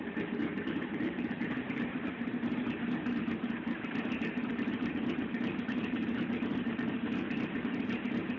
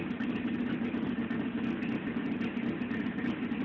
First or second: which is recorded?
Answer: second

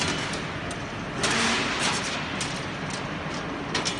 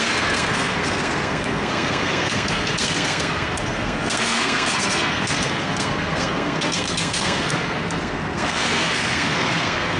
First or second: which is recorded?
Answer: first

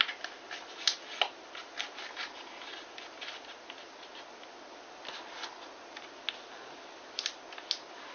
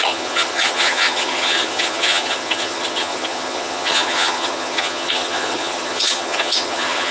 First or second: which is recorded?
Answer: first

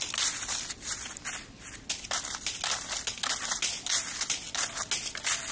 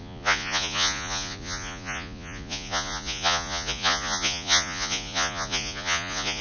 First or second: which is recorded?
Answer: first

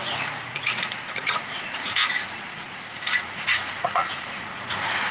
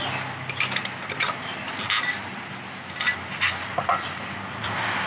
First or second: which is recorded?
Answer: second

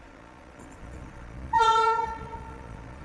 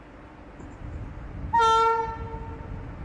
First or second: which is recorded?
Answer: second